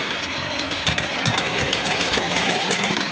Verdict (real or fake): fake